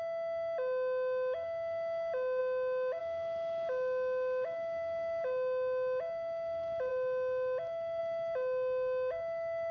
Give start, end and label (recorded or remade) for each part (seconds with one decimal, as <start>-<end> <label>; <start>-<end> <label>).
0.0-9.7 recorded